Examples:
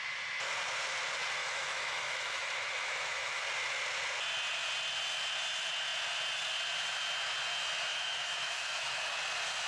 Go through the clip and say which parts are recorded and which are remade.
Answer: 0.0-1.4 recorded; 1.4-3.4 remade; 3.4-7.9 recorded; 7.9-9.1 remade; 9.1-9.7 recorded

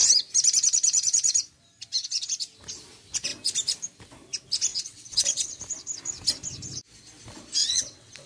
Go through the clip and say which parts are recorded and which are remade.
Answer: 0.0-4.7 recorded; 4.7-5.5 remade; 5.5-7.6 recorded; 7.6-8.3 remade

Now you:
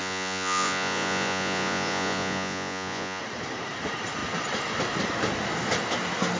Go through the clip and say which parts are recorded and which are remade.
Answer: 0.0-3.2 remade; 3.2-6.4 recorded